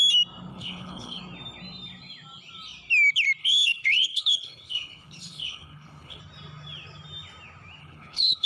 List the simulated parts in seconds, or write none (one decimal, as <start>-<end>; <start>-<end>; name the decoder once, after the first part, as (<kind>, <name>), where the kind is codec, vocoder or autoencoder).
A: 0.5-1.2 (codec, HILCodec); 3.4-6.2; 7.8-8.5